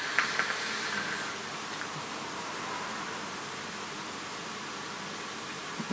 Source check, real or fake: real